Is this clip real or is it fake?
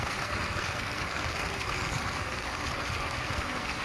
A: fake